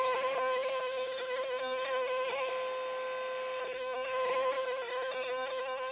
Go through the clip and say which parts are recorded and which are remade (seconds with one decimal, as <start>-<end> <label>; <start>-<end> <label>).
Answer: 0.0-2.5 remade; 2.5-3.6 recorded; 3.6-5.9 remade